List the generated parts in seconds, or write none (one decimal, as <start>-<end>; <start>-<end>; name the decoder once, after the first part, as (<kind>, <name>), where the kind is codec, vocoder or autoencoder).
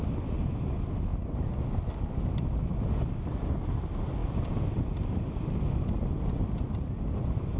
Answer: none